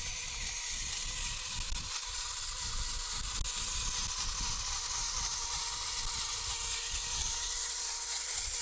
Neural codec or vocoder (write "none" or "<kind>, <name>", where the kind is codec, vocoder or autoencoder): none